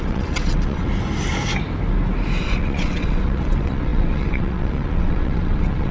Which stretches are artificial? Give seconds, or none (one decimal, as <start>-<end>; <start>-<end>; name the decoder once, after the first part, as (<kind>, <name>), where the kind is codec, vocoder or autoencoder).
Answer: 0.0-0.9 (vocoder, WaveNeXt); 2.4-5.9